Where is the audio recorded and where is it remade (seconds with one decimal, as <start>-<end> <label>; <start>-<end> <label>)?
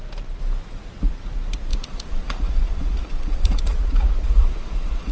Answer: 0.0-1.7 recorded; 1.7-5.1 remade